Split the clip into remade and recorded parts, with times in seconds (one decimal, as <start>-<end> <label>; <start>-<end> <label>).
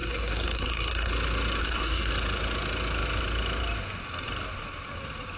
0.0-1.1 remade; 1.1-1.6 recorded; 1.6-2.1 remade; 2.1-5.4 recorded